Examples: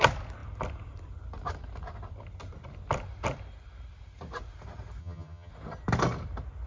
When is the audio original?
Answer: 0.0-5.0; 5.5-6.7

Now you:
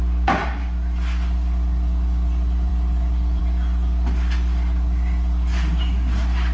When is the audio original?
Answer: 0.0-6.5

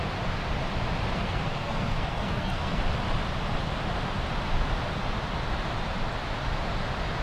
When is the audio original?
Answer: 0.0-1.1; 2.8-7.2